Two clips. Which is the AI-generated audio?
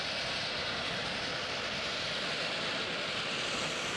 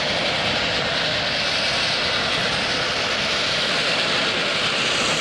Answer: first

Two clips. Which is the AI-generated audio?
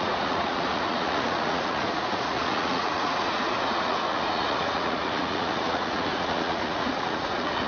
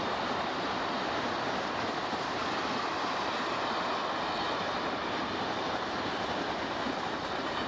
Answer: first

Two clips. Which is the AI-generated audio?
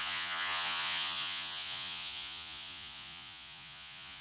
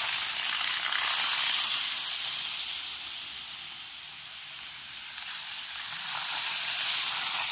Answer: first